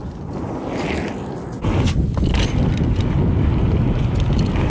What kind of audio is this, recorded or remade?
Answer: recorded